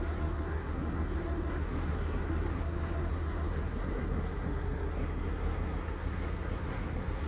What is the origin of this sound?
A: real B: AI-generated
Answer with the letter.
B